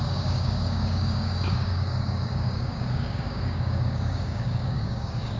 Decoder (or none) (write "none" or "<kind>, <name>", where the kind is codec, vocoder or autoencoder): codec, DAC